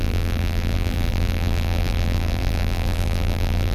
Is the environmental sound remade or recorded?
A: remade